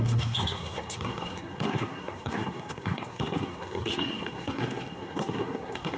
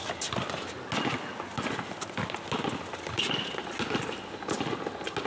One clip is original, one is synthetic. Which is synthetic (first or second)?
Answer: first